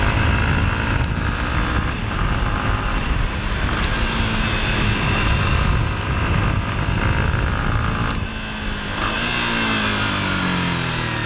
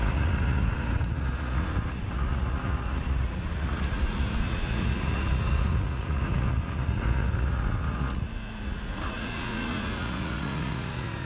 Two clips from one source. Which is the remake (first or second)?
second